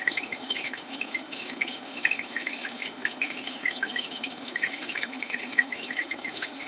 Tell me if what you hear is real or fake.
fake